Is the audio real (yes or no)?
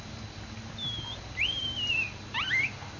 yes